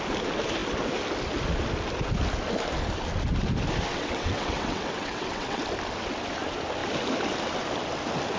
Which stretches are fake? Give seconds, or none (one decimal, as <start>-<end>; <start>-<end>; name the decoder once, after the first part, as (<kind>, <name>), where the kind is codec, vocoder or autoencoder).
3.9-5.6 (vocoder, WaveNeXt)